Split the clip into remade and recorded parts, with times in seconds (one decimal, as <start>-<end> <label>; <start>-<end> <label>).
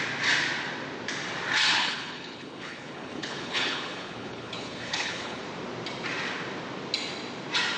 0.0-1.7 recorded; 1.7-5.4 remade; 5.4-7.8 recorded